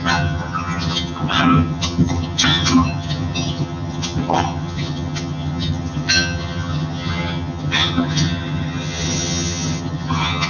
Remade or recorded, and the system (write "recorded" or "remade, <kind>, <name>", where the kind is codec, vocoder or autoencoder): remade, vocoder, HiFi-GAN